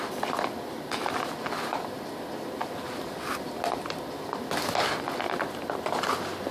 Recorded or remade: recorded